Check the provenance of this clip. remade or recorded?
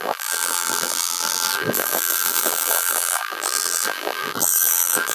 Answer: remade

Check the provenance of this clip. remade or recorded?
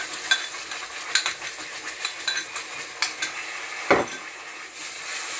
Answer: recorded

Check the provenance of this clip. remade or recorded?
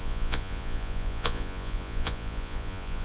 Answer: remade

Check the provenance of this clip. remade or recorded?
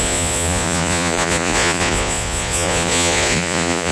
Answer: remade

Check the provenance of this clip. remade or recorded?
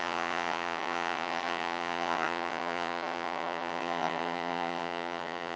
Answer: remade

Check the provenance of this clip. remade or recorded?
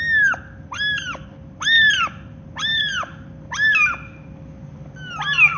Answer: recorded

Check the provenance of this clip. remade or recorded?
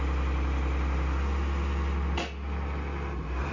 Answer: recorded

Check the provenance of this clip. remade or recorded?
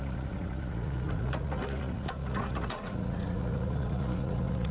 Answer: remade